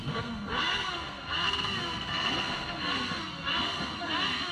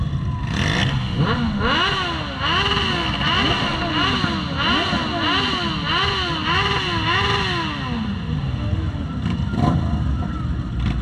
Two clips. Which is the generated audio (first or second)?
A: first